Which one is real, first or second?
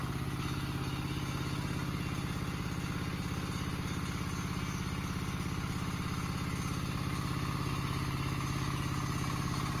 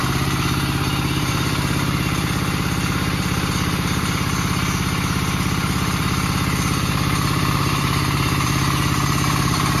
first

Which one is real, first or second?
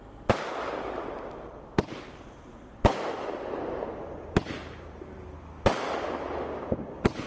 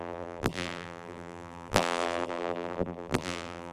first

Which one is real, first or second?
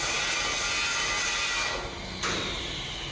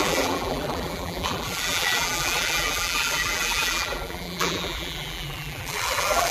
first